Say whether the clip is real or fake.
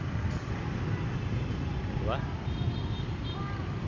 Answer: real